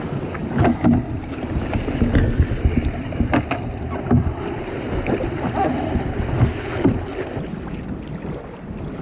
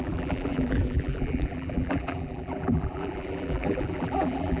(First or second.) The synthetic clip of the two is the second